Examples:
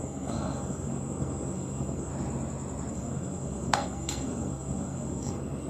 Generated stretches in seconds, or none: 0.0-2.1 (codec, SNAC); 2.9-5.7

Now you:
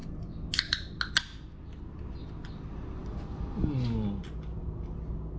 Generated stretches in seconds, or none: none

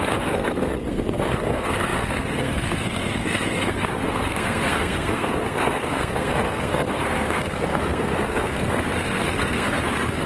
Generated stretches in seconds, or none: 0.0-10.3 (codec, SNAC)

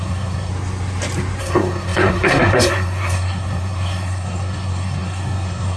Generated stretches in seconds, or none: 0.0-0.5 (codec, SNAC); 1.4-5.8

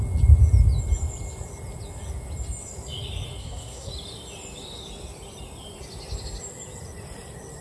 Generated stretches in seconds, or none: 3.4-3.9 (codec, SNAC)

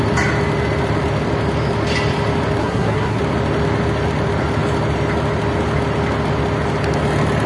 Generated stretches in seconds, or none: 2.6-3.2 (codec, SNAC)